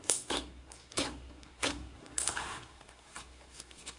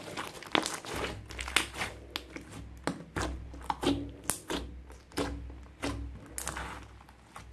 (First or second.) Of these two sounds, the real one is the second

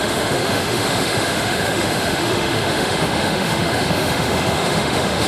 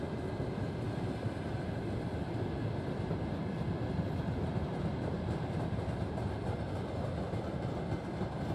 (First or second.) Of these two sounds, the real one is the second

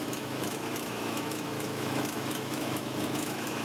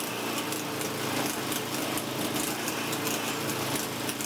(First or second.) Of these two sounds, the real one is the second